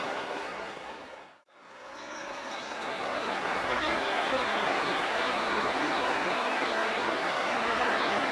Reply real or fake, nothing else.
fake